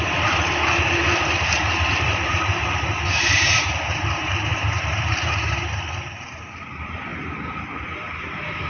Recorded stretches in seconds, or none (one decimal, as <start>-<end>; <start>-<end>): 7.1-7.8